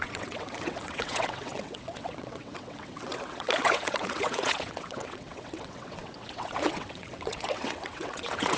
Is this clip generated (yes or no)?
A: yes